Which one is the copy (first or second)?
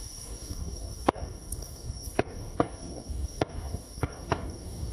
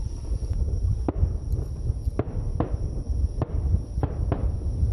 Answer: first